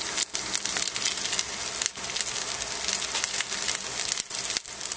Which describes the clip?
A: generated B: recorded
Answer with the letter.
B